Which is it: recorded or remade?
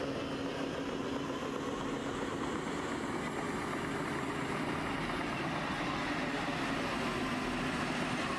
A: recorded